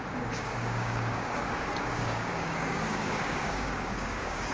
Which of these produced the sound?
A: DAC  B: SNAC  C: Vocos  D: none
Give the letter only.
A